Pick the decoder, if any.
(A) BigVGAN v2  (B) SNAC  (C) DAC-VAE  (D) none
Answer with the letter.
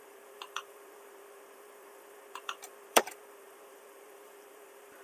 A